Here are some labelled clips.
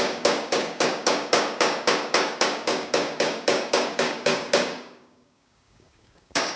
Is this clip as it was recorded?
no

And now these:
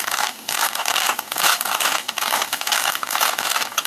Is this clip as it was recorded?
no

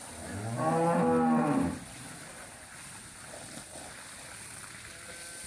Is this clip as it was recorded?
yes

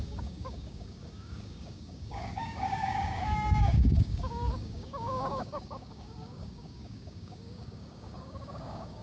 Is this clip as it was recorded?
no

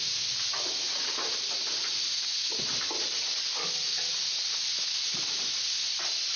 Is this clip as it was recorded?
yes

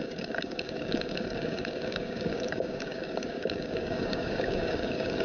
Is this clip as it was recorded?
no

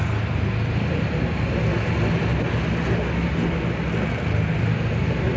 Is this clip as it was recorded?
yes